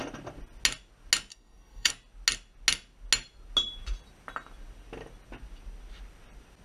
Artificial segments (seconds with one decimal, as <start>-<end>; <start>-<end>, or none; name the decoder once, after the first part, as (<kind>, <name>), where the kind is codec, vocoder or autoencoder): 1.3-1.9 (codec, SNAC)